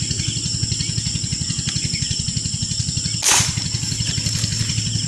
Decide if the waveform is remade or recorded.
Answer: recorded